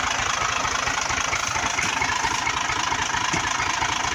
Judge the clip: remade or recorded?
recorded